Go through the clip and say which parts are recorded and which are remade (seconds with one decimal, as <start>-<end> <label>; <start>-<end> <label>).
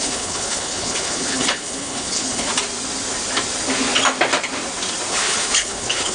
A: 0.0-2.5 remade; 2.5-5.1 recorded; 5.1-6.1 remade